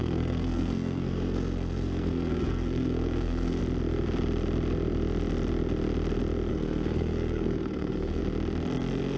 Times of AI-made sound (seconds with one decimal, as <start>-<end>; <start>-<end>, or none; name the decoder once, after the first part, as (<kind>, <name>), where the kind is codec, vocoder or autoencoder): 0.0-3.6 (codec, SNAC); 6.5-8.2